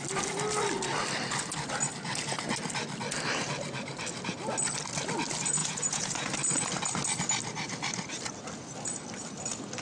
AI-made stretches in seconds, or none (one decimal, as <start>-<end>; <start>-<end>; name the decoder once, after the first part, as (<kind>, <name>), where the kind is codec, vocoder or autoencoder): 5.6-6.3 (vocoder, Vocos)